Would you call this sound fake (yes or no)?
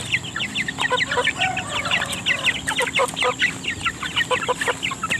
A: no